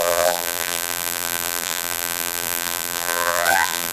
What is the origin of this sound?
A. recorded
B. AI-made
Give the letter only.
B